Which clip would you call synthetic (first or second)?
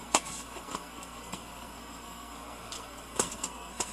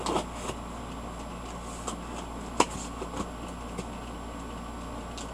first